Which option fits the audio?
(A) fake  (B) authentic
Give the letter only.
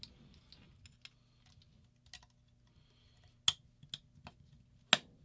B